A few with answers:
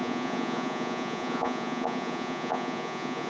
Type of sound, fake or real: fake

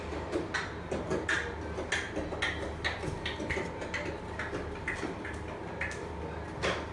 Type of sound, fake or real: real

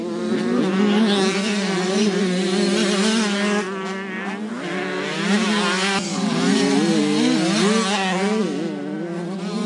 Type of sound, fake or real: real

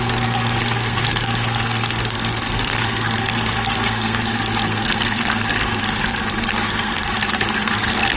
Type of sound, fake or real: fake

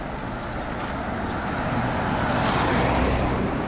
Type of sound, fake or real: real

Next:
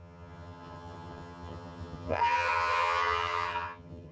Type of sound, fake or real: fake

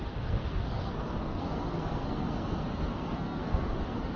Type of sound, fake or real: fake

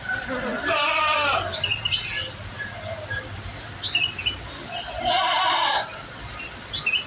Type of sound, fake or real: real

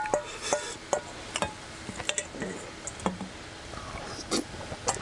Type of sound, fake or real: real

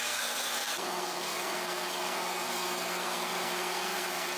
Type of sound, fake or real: fake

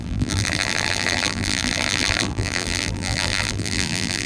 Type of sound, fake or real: fake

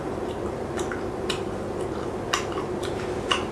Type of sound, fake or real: real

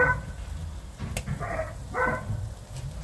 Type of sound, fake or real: real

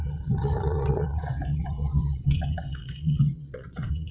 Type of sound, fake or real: fake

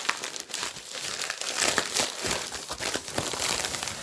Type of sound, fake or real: fake